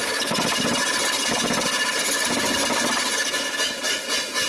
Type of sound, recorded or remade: recorded